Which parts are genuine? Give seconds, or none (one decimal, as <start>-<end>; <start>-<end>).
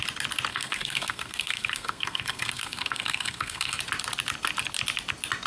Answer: 0.0-0.5; 3.8-5.5